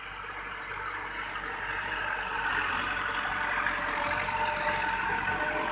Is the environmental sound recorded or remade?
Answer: recorded